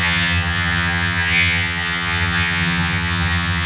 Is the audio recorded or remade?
remade